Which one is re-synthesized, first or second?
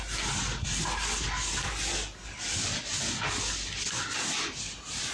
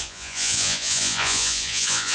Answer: second